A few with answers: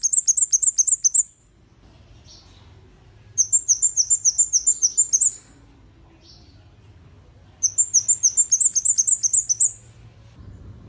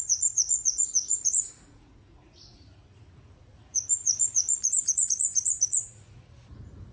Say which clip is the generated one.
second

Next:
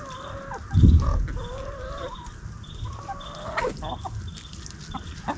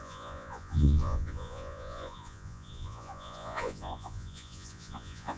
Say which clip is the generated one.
second